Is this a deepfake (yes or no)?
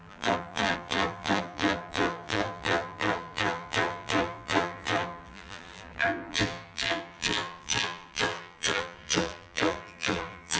yes